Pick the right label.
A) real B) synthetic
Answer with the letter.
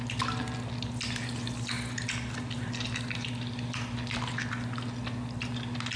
A